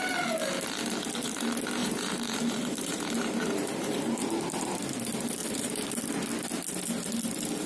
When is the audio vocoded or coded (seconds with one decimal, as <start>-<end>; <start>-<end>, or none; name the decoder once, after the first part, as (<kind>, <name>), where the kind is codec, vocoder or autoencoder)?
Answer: 1.8-4.8 (vocoder, BigVGAN v2); 5.4-6.0